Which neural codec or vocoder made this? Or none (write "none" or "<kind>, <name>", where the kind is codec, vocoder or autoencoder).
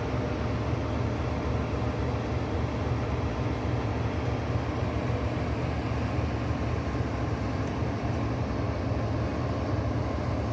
none